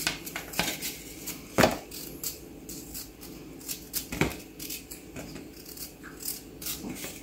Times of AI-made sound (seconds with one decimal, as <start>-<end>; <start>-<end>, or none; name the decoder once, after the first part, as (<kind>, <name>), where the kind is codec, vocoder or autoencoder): none